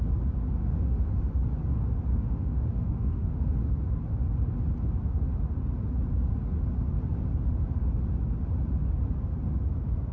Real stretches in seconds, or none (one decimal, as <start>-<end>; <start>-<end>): 0.0-0.6; 1.1-2.1; 3.5-10.1